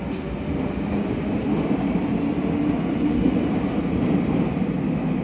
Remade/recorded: recorded